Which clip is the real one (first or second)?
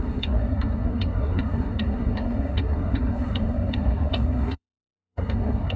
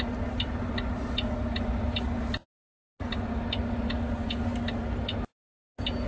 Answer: second